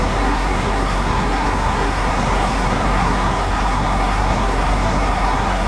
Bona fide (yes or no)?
no